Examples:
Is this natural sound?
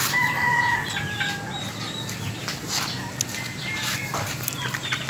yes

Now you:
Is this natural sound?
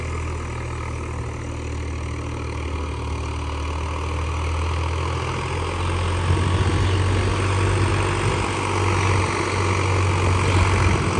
yes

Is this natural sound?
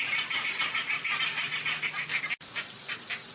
yes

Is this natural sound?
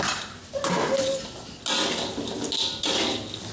yes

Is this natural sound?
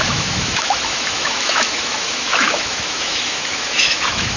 no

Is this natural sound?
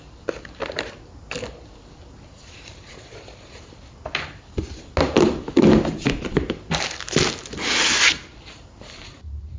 yes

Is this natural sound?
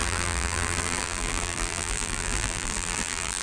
no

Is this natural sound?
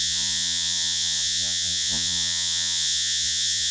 no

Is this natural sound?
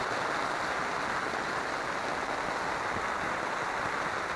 yes